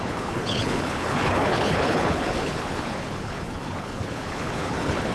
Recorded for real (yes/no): no